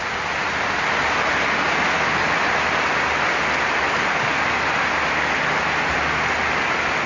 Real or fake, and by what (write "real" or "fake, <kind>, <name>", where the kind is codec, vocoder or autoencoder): real